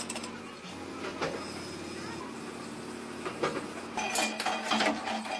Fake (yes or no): no